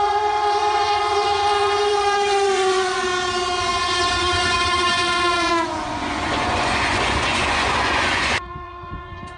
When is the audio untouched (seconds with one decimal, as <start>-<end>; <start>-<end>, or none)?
3.1-3.6

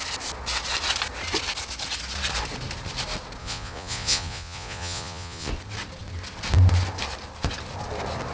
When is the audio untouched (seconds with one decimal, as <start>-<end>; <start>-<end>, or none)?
0.0-3.4; 5.5-8.3

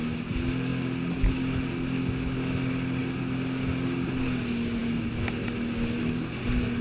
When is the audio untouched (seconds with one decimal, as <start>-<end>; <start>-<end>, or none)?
0.0-6.8

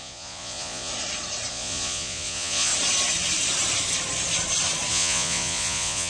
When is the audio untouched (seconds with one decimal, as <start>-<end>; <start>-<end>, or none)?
0.9-1.5; 2.7-4.9

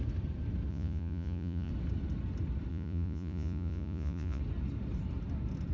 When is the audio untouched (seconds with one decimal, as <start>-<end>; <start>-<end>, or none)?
0.0-0.7; 1.7-2.7; 4.4-5.7

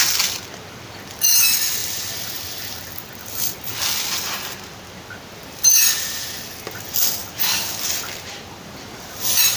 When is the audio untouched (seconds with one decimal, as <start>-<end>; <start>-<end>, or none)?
0.0-9.6